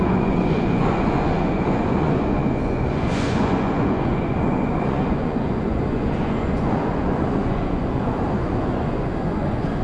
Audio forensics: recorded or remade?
remade